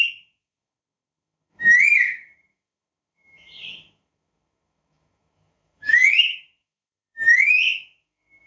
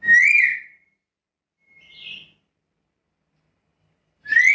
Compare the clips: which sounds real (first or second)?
second